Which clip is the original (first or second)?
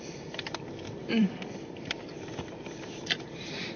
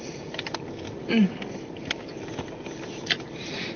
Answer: second